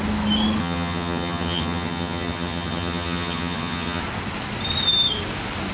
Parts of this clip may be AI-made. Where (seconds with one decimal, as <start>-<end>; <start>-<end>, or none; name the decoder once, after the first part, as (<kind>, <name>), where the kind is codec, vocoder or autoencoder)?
0.6-4.0 (vocoder, HiFi-GAN)